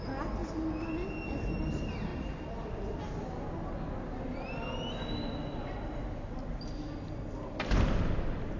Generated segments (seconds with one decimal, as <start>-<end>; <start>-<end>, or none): none